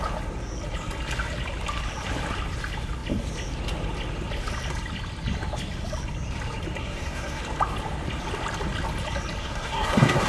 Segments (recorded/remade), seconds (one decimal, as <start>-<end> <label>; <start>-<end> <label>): 0.0-6.8 recorded; 6.8-7.4 remade; 7.4-9.4 recorded; 9.4-10.3 remade